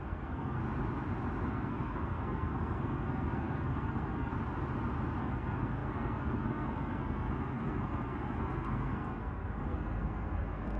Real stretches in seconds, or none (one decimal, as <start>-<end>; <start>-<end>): 0.6-1.5; 4.3-5.2